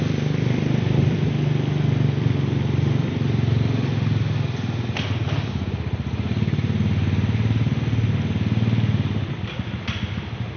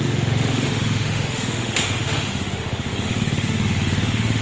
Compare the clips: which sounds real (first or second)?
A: first